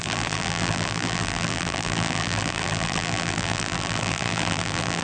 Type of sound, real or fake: fake